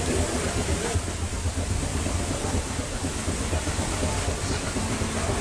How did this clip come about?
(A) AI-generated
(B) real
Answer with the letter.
B